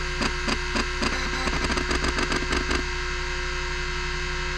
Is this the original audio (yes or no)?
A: yes